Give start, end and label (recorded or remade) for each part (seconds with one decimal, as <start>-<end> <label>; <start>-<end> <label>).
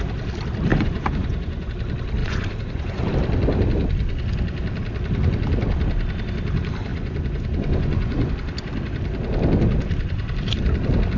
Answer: 0.0-0.7 recorded; 0.7-1.7 remade; 1.7-2.2 recorded; 2.2-3.1 remade; 3.1-6.9 recorded; 6.9-8.3 remade; 8.3-11.2 recorded